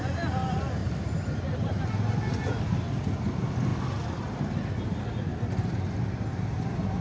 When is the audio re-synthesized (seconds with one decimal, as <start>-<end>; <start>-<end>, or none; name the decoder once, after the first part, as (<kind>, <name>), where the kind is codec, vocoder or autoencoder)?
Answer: 0.8-1.8 (vocoder, BigVGAN v2)

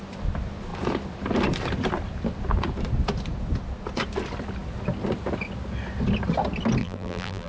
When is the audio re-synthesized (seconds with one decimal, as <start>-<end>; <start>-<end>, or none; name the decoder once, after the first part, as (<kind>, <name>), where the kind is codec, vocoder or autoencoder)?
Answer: 6.8-7.5 (vocoder, BigVGAN v2)